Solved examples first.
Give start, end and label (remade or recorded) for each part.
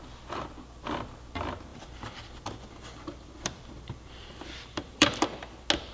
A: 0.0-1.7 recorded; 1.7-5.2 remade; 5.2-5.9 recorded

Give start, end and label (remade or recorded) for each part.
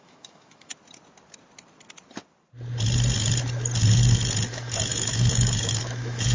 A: 0.0-0.7 remade; 0.7-4.5 recorded; 4.5-6.3 remade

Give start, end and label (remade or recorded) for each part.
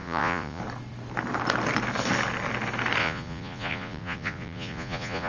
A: 0.0-0.6 remade; 0.6-3.0 recorded; 3.0-5.3 remade